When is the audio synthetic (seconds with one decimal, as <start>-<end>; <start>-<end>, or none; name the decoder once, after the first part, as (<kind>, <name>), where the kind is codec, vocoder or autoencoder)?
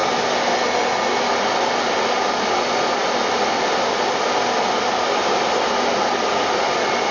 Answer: none